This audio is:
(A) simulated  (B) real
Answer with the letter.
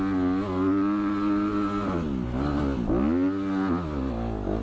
B